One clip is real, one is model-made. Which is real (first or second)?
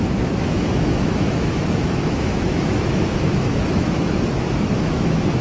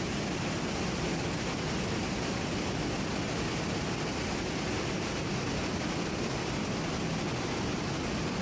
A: second